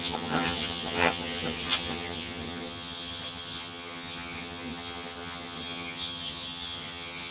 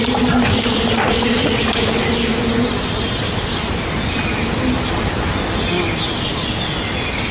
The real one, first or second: second